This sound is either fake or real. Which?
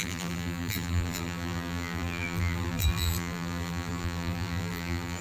fake